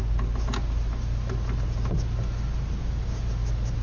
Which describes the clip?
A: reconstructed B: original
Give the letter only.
B